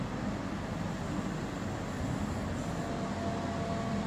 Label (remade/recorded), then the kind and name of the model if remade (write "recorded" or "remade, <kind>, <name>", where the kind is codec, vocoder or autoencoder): recorded